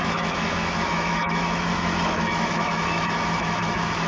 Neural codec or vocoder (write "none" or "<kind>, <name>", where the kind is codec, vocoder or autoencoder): autoencoder, DAC-VAE